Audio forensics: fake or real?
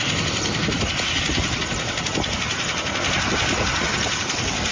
real